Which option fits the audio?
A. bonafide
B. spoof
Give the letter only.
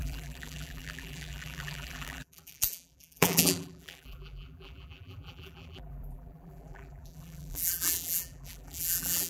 B